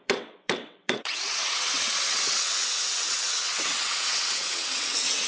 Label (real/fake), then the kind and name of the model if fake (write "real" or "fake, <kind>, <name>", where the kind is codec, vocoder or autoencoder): fake, vocoder, WaveNeXt